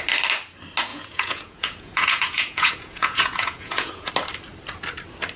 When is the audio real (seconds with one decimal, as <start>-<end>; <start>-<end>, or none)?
0.0-0.9; 4.1-5.4